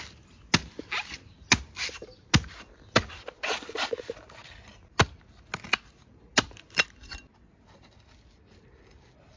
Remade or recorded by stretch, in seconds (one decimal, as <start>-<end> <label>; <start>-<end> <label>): 0.0-9.4 recorded